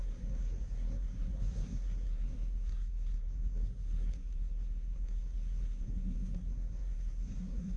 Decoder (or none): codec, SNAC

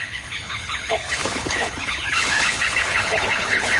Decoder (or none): codec, HILCodec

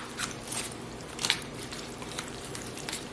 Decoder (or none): vocoder, BigVGAN v2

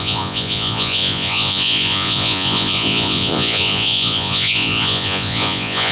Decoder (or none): vocoder, Vocos